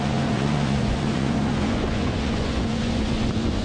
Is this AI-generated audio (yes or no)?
yes